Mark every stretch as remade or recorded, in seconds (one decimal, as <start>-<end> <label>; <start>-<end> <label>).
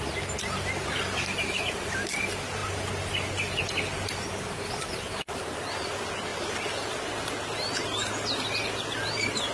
0.0-9.5 recorded